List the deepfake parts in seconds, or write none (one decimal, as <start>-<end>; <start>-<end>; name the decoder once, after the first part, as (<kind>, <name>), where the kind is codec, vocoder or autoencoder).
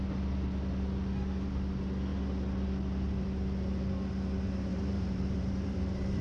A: 4.7-6.2 (vocoder, BigVGAN v2)